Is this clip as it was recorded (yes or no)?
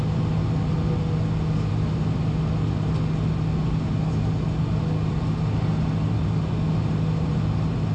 yes